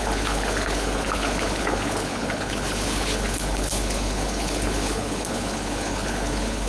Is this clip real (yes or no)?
no